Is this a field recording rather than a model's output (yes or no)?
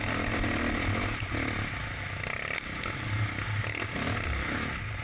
yes